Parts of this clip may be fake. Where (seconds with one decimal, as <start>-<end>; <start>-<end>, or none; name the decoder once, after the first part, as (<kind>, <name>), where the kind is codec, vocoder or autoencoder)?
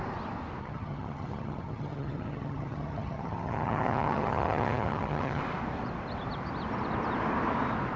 0.6-5.4 (vocoder, HiFi-GAN)